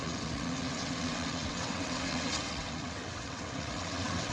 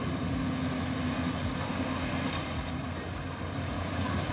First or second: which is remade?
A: first